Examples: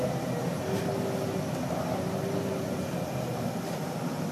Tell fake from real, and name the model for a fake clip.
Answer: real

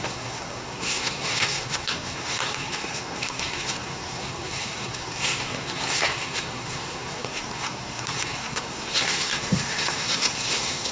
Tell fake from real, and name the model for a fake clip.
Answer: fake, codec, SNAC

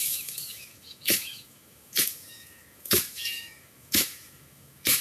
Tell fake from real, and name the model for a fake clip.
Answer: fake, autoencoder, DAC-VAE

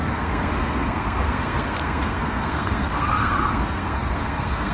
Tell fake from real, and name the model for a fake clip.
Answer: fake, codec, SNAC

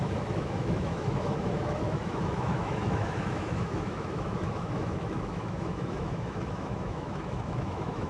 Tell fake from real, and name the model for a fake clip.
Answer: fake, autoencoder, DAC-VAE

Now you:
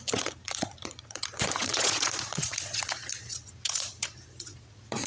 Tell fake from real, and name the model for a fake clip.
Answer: fake, vocoder, Vocos